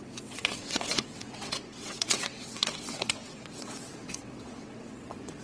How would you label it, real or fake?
fake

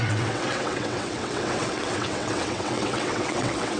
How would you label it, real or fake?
fake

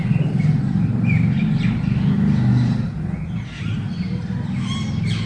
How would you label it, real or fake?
real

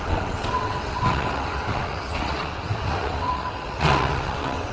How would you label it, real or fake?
fake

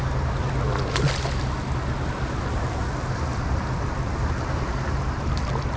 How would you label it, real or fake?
real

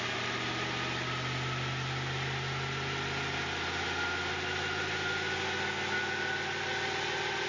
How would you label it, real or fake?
real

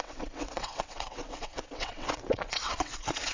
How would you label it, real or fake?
fake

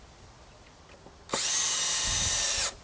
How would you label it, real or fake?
real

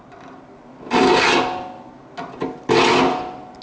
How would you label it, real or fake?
real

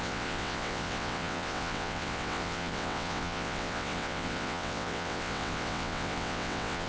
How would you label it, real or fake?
fake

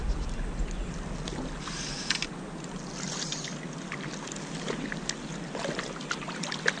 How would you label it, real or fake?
real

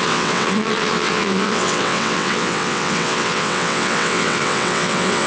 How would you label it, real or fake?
fake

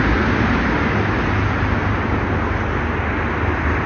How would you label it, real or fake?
real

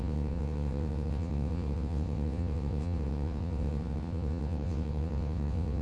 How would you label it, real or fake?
fake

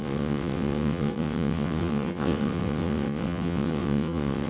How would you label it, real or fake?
fake